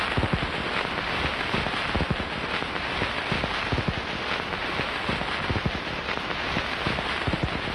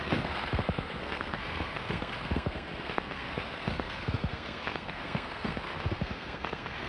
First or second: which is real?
first